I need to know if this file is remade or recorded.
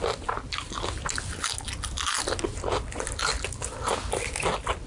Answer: recorded